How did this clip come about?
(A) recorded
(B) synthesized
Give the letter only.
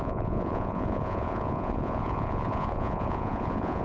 B